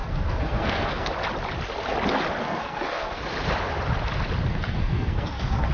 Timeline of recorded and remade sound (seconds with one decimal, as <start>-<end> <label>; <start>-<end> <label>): 0.0-1.1 remade; 1.1-2.4 recorded; 2.4-3.2 remade; 3.2-4.5 recorded; 4.5-5.7 remade